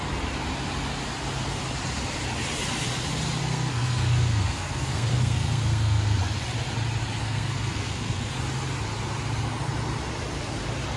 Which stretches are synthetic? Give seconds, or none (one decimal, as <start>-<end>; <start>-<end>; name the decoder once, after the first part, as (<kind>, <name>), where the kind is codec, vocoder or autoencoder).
3.4-6.2 (codec, SNAC); 7.2-8.3